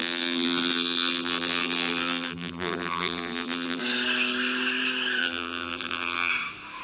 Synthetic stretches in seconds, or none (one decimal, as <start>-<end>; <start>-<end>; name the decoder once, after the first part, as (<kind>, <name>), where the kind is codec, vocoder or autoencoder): 0.0-3.8 (vocoder, BigVGAN v2); 5.2-6.3